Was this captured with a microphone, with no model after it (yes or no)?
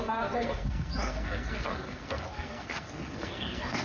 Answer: no